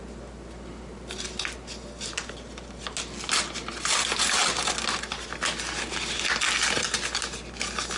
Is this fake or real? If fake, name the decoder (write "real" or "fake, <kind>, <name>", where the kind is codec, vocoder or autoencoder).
real